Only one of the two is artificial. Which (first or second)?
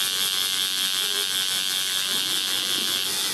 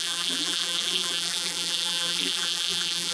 second